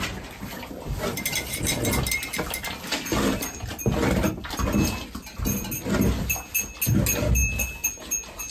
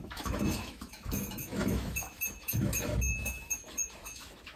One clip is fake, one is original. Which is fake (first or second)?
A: second